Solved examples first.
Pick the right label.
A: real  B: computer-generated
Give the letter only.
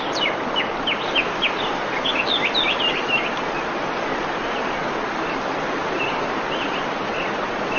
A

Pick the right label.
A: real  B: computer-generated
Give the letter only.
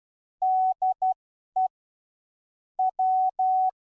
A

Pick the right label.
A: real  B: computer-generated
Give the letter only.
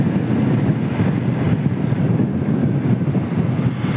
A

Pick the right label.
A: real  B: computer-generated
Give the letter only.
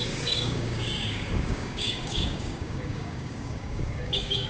B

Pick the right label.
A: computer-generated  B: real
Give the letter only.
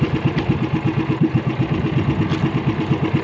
B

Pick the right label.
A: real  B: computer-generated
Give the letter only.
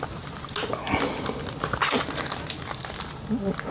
A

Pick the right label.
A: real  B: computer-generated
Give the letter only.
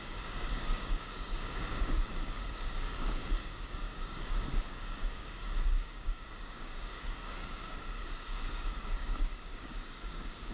B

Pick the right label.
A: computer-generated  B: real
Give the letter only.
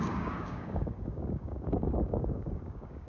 A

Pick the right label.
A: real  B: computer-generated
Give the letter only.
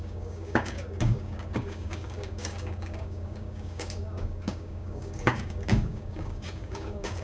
B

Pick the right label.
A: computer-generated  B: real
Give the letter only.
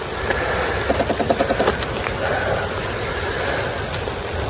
B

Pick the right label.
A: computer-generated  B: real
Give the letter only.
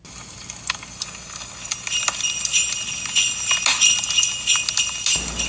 B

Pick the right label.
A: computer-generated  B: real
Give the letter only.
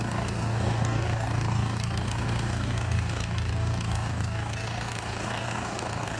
A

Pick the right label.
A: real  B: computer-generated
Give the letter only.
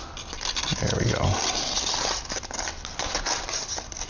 A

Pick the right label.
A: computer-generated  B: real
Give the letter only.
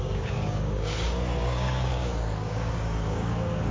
A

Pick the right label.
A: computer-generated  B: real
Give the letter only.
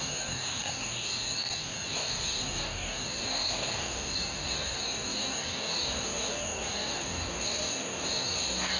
A